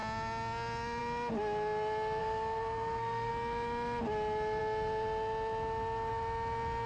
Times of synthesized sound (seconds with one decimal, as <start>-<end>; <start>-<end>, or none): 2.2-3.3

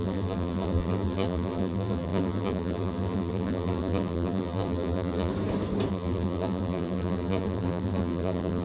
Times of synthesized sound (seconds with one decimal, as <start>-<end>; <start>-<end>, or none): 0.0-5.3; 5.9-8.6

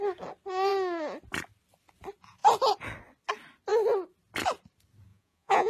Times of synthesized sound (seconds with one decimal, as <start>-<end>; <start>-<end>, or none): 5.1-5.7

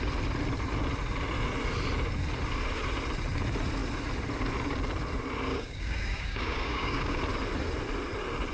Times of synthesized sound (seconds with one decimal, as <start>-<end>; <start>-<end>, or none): 5.5-7.2